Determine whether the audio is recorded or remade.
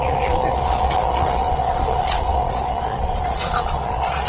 remade